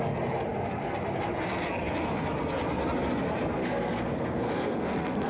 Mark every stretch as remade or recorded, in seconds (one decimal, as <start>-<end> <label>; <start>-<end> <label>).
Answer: 0.0-3.6 recorded; 3.6-5.3 remade